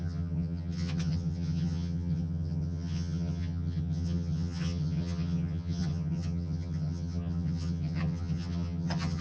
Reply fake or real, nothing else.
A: fake